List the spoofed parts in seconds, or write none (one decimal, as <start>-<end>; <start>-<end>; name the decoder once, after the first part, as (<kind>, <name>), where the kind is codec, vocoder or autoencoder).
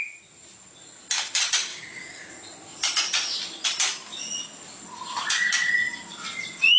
1.7-2.3 (codec, DAC)